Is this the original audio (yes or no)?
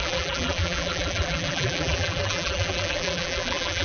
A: no